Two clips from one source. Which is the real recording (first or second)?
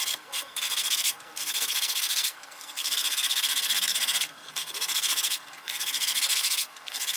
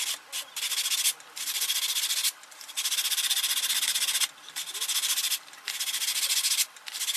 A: second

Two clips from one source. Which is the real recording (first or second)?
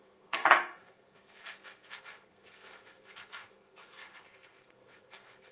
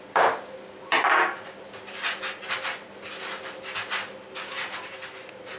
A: second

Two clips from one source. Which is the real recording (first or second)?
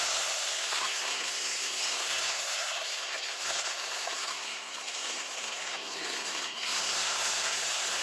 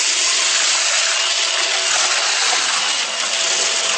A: second